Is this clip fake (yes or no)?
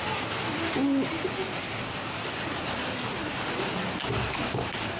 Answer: no